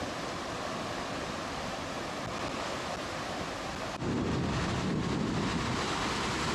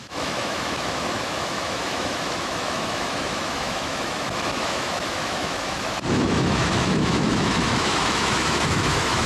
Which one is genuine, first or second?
first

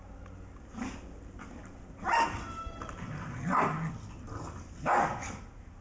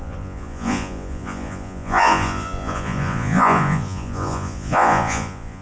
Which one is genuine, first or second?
first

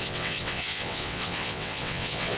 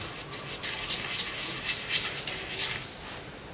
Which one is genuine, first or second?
second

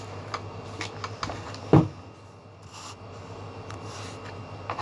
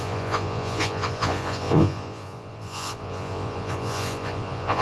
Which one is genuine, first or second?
first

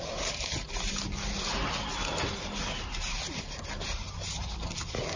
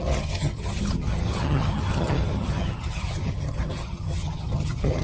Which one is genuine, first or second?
first